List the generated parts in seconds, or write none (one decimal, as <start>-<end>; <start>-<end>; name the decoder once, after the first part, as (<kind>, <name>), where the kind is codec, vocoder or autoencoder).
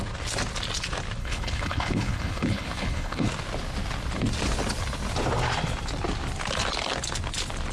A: 1.2-3.3 (codec, HILCodec)